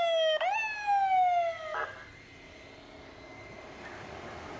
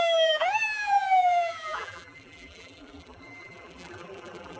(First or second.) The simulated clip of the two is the second